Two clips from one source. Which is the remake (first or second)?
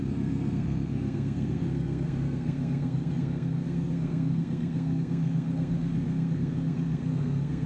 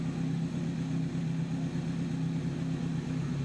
first